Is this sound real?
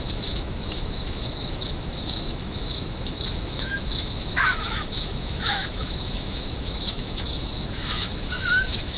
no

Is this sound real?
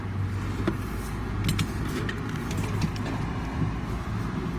yes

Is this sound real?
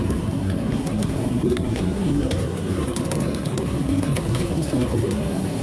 no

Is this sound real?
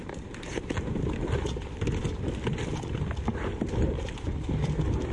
yes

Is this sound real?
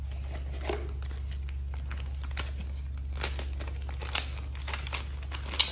yes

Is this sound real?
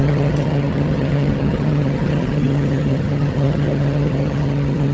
no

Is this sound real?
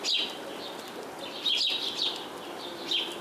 yes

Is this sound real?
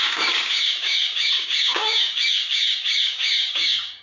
no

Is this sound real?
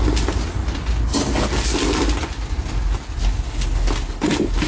yes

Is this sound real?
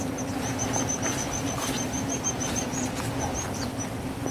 yes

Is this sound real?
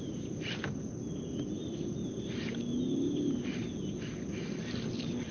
yes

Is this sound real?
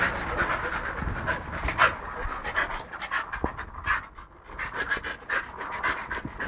yes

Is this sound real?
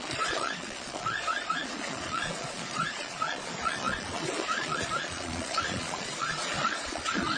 no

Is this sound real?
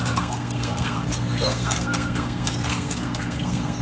no